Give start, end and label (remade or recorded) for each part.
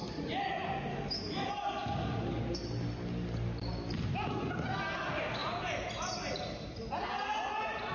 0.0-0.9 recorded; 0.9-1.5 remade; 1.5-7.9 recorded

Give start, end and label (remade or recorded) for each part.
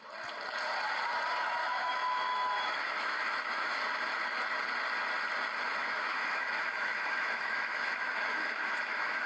0.0-1.6 recorded; 1.6-3.8 remade; 3.8-5.8 recorded; 5.8-9.3 remade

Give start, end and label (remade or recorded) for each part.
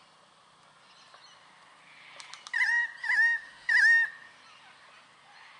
0.0-3.0 recorded; 3.0-4.1 remade; 4.1-5.6 recorded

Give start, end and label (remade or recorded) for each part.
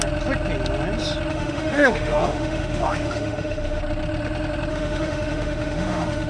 0.0-1.3 recorded; 1.3-3.8 remade; 3.8-4.7 recorded; 4.7-6.3 remade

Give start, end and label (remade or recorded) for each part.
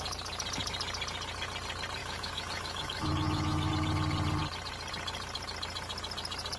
0.0-2.0 recorded; 2.0-3.7 remade; 3.7-6.6 recorded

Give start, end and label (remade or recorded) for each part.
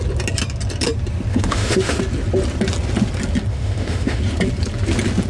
0.0-1.3 recorded; 1.3-2.0 remade; 2.0-3.5 recorded; 3.5-4.2 remade; 4.2-5.3 recorded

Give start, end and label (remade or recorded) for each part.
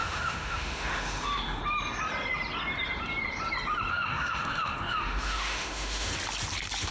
0.0-1.6 remade; 1.6-3.9 recorded; 3.9-6.1 remade; 6.1-6.9 recorded